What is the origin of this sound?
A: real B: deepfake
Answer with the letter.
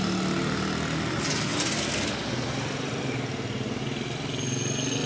A